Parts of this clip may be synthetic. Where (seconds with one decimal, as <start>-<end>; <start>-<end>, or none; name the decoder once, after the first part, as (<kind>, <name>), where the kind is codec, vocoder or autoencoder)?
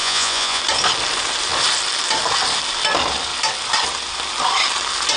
0.0-0.6 (vocoder, Vocos)